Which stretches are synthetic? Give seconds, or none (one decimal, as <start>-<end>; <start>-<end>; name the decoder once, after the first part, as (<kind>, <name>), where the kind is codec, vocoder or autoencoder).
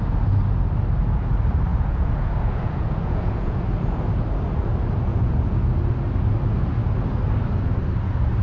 1.7-3.6 (vocoder, Vocos); 5.1-5.7